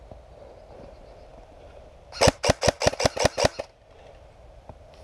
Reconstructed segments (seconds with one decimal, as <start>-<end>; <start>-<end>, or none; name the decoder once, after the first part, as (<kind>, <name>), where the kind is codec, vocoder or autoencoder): none

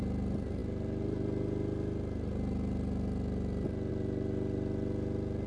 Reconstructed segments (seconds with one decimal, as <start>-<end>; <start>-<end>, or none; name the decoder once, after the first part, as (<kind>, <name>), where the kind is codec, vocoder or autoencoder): none

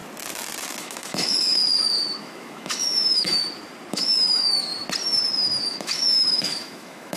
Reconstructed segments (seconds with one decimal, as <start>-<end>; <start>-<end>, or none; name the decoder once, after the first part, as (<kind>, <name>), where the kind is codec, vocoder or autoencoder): 0.8-1.6 (autoencoder, DAC-VAE); 2.2-3.4; 3.9-4.7; 5.7-7.2